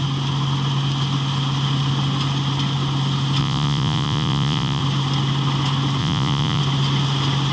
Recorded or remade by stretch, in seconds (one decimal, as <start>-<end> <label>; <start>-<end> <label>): 0.0-3.4 recorded; 3.4-4.8 remade; 4.8-6.0 recorded; 6.0-6.6 remade; 6.6-7.5 recorded